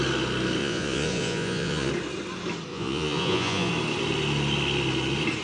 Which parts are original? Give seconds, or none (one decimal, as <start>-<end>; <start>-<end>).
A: 0.0-0.6; 1.9-2.7; 3.7-5.4